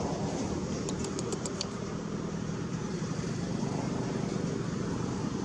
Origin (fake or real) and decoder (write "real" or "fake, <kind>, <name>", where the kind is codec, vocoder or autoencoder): fake, vocoder, BigVGAN v2